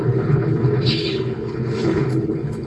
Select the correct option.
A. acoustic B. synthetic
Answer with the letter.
B